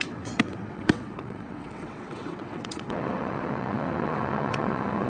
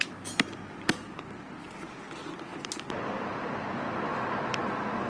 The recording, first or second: second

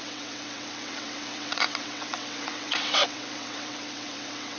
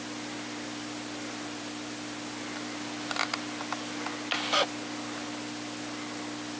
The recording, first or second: second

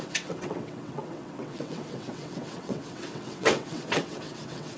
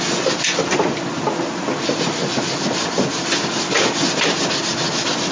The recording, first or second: second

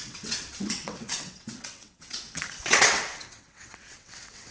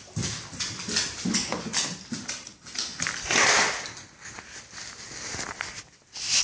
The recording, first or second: second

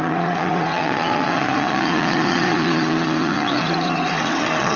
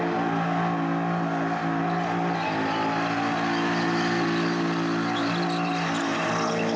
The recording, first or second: second